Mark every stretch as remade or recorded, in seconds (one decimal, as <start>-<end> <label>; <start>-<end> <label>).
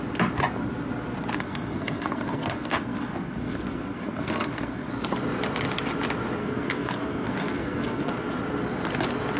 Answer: 0.0-1.3 recorded; 1.3-4.9 remade; 4.9-6.4 recorded; 6.4-8.1 remade; 8.1-9.4 recorded